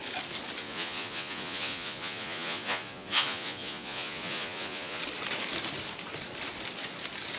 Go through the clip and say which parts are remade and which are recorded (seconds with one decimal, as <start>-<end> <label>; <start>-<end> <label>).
0.0-0.6 recorded; 0.6-5.0 remade; 5.0-7.4 recorded